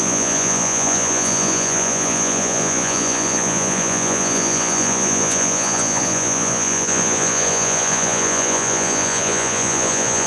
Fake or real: fake